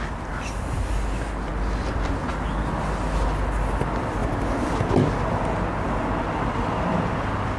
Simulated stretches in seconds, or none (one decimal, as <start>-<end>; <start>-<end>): none